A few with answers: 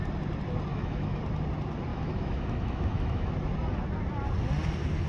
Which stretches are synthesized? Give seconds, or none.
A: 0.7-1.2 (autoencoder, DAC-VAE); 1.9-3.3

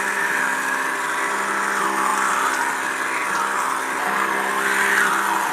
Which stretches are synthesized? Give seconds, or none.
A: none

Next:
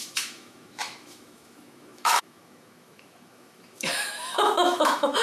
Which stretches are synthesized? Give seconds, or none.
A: 0.0-5.2 (autoencoder, DAC-VAE)

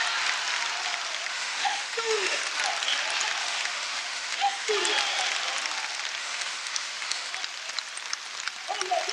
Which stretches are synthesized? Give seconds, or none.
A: 1.3-2.4 (autoencoder, DAC-VAE); 3.4-4.7; 6.2-7.3

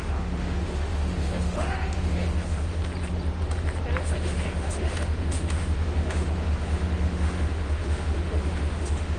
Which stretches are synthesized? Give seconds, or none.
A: 0.0-2.8 (autoencoder, DAC-VAE); 4.0-9.2